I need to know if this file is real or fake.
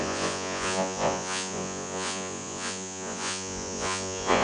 fake